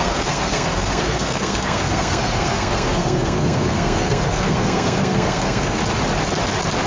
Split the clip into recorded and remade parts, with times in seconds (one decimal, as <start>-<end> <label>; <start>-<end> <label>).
0.0-5.8 remade; 5.8-6.9 recorded